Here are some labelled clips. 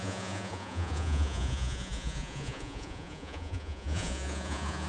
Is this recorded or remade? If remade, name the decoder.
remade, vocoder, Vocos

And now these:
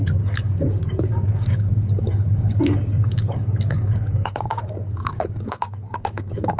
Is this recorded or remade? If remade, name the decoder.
remade, codec, DAC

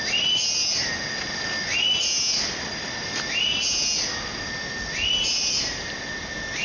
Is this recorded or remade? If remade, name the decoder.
recorded